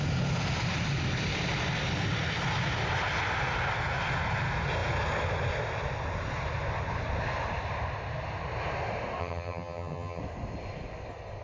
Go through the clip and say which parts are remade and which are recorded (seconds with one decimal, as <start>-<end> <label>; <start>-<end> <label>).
0.0-9.2 recorded; 9.2-10.2 remade; 10.2-11.4 recorded